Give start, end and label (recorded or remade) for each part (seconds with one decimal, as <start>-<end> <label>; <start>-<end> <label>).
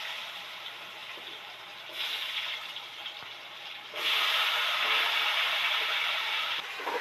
0.0-7.0 remade